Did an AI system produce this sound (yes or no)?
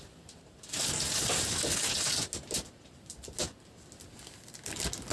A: no